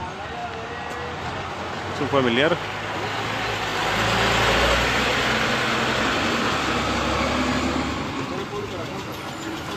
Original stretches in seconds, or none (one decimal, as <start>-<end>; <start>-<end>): 0.0-9.8